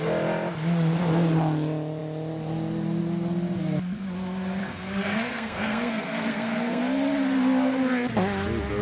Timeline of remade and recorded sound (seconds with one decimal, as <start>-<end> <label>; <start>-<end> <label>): 0.0-4.6 recorded; 4.6-6.8 remade; 6.8-8.8 recorded